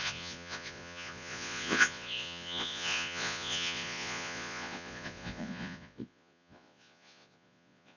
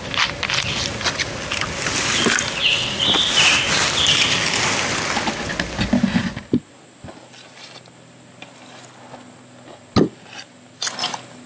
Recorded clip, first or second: second